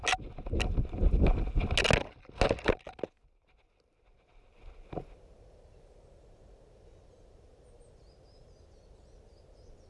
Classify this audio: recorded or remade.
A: recorded